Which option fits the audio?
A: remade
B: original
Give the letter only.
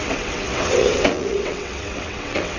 A